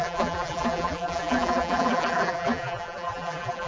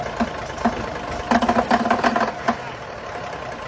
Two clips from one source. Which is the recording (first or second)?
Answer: second